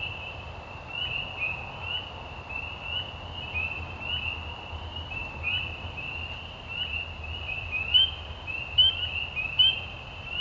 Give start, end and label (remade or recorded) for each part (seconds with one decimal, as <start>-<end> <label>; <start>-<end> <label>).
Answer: 0.0-5.2 recorded; 5.2-5.9 remade; 5.9-10.4 recorded